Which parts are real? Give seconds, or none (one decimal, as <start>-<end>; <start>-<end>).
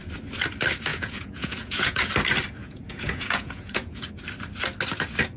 0.0-0.9; 2.1-2.6; 4.1-5.4